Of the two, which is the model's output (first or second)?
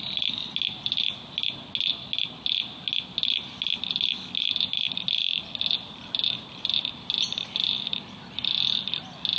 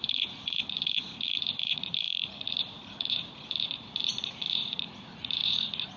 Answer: second